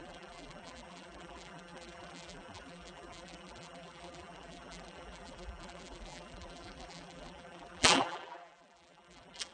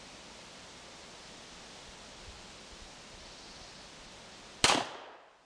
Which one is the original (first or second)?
second